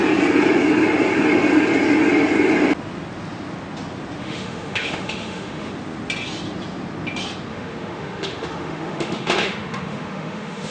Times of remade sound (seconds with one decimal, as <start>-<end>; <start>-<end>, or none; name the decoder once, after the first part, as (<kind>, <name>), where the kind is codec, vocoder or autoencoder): 4.2-5.7 (autoencoder, DAC-VAE); 7.5-10.7